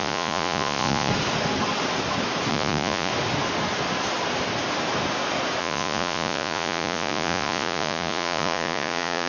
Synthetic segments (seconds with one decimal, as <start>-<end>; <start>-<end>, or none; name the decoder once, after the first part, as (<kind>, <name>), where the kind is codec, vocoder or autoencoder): 0.0-1.1 (vocoder, Vocos); 2.5-3.1; 5.6-9.3